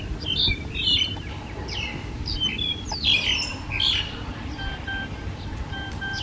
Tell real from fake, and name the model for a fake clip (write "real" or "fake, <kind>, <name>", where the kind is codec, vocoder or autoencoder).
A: real